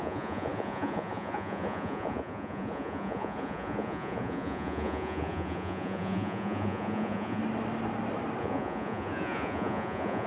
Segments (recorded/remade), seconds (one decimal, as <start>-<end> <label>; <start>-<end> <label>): 0.0-7.4 remade; 7.4-8.4 recorded; 8.4-10.3 remade